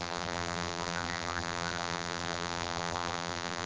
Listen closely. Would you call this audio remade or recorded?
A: remade